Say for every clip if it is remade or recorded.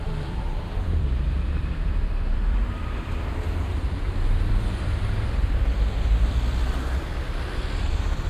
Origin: remade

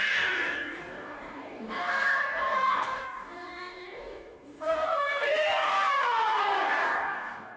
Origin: remade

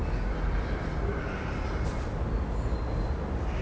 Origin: recorded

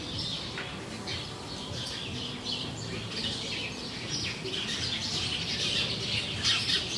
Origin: recorded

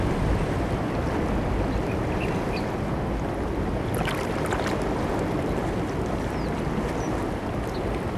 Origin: recorded